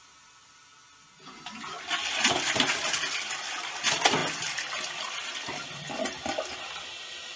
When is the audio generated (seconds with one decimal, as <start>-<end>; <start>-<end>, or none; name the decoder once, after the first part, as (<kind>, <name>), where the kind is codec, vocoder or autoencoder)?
none